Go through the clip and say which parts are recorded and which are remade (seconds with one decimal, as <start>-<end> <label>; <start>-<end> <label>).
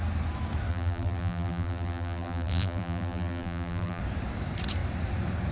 0.0-0.7 recorded; 0.7-4.0 remade; 4.0-5.5 recorded